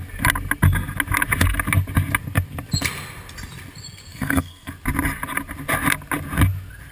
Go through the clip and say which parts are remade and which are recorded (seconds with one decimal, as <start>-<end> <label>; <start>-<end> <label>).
0.0-4.1 recorded; 4.1-4.7 remade; 4.7-6.9 recorded